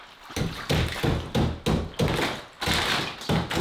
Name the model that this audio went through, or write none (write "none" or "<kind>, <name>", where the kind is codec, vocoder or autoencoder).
none